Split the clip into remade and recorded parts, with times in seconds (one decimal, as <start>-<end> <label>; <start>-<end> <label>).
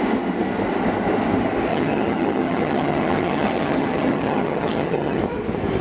0.0-1.7 recorded; 1.7-5.2 remade; 5.2-5.8 recorded